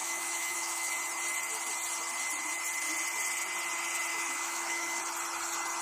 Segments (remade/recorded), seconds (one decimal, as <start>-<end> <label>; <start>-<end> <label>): 0.0-0.9 remade; 0.9-4.1 recorded; 4.1-5.0 remade; 5.0-5.8 recorded